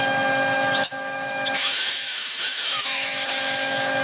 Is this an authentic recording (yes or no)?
no